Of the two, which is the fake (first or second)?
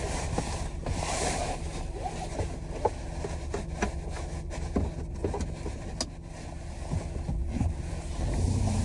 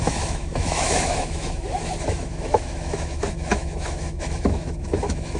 second